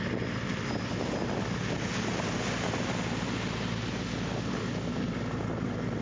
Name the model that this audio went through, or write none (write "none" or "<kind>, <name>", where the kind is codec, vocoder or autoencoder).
none